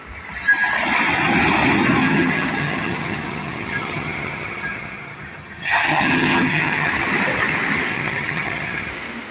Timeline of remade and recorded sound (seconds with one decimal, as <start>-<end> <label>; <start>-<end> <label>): 0.0-2.0 recorded; 2.0-6.9 remade; 6.9-7.9 recorded; 7.9-8.9 remade; 8.9-9.3 recorded